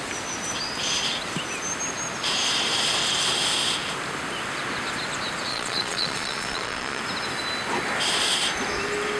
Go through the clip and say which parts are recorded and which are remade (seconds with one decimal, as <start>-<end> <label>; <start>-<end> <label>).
0.0-5.5 recorded; 5.5-7.0 remade; 7.0-9.2 recorded